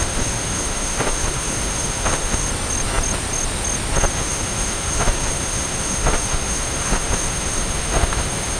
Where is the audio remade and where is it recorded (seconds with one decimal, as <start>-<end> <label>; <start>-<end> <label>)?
0.0-2.5 remade; 2.5-4.1 recorded; 4.1-8.6 remade